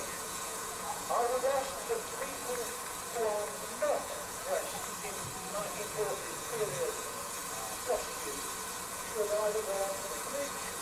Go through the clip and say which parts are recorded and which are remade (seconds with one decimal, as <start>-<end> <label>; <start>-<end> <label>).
0.0-2.4 remade; 2.4-3.1 recorded; 3.1-4.6 remade; 4.6-5.5 recorded; 5.5-7.4 remade; 7.4-8.9 recorded; 8.9-10.8 remade